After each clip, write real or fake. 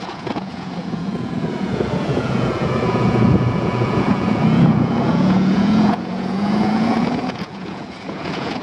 fake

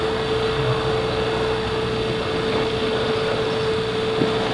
real